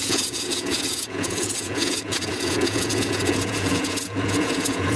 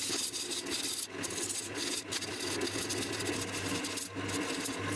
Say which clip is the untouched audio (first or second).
second